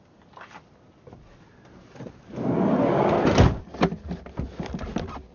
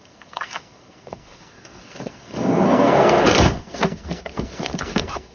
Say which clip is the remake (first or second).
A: second